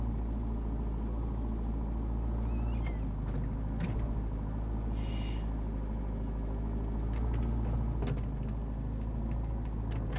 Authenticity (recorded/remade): recorded